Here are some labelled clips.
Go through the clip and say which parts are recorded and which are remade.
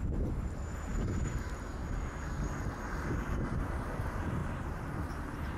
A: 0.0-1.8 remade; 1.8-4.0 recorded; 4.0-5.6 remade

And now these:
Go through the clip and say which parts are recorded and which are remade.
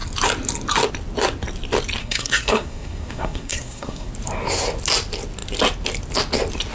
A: 0.0-2.0 recorded; 2.0-4.1 remade; 4.1-6.7 recorded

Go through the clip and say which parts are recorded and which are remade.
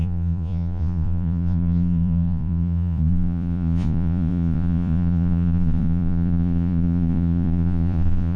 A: 0.0-8.4 remade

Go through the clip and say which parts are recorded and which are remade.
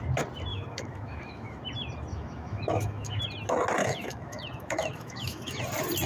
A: 0.0-0.5 recorded; 0.5-1.6 remade; 1.6-2.1 recorded; 2.1-3.2 remade; 3.2-3.8 recorded; 3.8-5.6 remade; 5.6-6.1 recorded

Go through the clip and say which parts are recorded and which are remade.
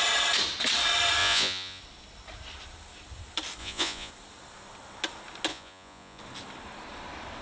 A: 0.0-1.2 recorded; 1.2-1.8 remade; 1.8-3.6 recorded; 3.6-4.1 remade; 4.1-5.5 recorded; 5.5-6.2 remade; 6.2-7.4 recorded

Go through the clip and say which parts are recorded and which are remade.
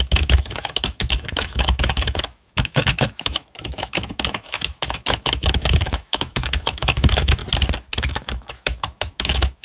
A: 0.0-7.4 remade; 7.4-8.0 recorded; 8.0-9.6 remade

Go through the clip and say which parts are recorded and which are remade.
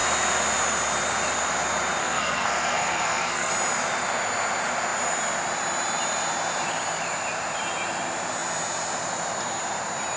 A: 0.0-2.0 recorded; 2.0-3.5 remade; 3.5-10.2 recorded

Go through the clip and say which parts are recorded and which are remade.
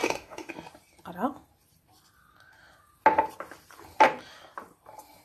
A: 0.0-0.5 remade; 0.5-5.2 recorded